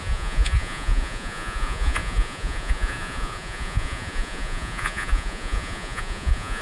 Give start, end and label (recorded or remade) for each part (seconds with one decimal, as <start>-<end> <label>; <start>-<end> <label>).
0.0-6.6 remade